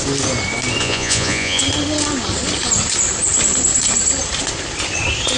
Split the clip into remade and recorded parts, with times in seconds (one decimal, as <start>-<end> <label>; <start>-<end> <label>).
0.0-0.8 recorded; 0.8-1.6 remade; 1.6-5.4 recorded